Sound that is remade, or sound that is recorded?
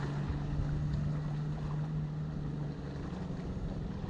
recorded